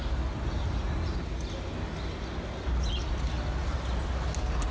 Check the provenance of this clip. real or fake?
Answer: real